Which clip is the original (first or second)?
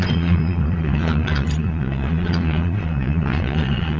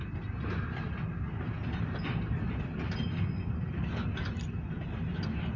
second